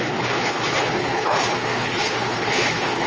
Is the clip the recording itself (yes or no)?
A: no